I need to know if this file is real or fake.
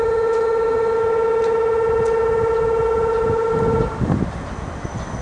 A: real